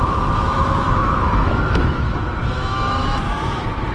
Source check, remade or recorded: remade